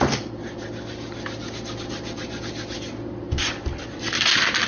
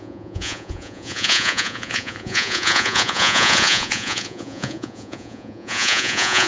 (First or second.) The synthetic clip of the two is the second